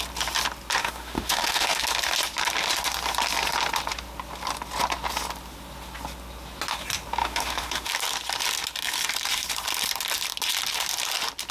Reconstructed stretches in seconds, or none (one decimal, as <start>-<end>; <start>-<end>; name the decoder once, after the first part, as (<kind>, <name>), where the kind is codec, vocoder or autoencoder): 0.8-1.8 (autoencoder, DAC-VAE); 7.2-7.9